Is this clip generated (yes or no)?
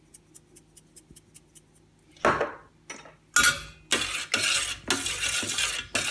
no